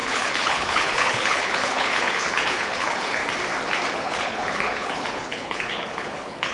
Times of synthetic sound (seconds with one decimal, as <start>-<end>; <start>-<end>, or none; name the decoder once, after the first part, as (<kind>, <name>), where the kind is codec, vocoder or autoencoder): 0.0-3.2 (codec, HILCodec); 3.9-6.5